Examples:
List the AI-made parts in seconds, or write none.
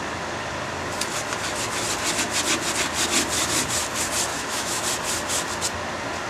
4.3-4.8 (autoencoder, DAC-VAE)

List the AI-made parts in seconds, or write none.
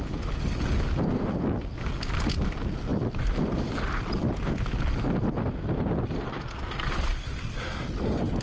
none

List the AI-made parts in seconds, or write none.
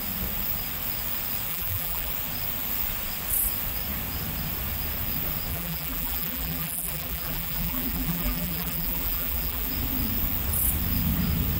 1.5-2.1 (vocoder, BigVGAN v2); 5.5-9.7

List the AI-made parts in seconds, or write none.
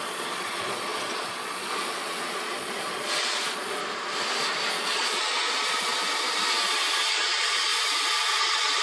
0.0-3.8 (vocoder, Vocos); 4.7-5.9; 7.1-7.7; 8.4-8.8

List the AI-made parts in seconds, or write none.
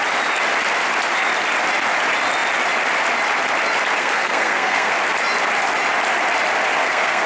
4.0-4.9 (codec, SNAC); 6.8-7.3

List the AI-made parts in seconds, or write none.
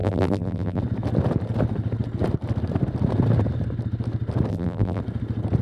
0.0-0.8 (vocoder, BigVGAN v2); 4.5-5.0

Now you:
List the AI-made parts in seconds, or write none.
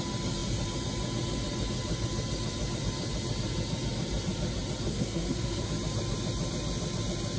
4.9-5.7 (codec, SNAC)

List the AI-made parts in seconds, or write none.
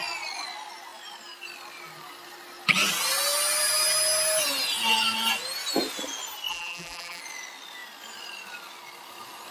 6.5-7.2 (vocoder, BigVGAN v2)